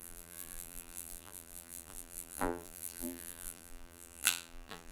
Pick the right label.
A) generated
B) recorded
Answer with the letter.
A